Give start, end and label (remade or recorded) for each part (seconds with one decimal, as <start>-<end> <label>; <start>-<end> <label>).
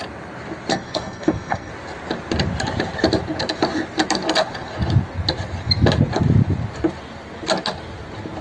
0.0-0.7 recorded; 0.7-1.7 remade; 1.7-8.4 recorded